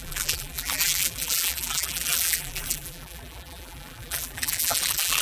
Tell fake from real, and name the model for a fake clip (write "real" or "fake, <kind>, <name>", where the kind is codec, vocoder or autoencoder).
fake, vocoder, BigVGAN v2